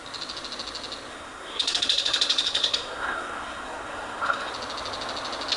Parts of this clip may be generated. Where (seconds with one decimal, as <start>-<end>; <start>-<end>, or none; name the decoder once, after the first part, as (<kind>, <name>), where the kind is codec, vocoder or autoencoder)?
1.1-4.5 (codec, SNAC)